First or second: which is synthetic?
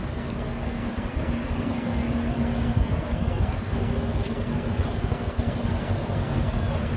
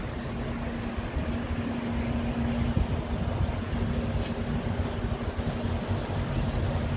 first